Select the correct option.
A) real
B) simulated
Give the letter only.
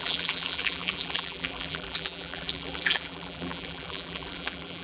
B